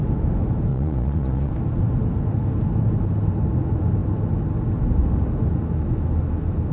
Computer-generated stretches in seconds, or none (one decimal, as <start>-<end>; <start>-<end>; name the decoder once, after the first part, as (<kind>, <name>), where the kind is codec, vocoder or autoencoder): 0.7-1.5 (vocoder, Vocos)